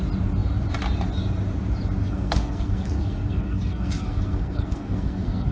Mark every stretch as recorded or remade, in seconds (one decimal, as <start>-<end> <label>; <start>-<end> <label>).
0.0-2.0 recorded; 2.0-5.5 remade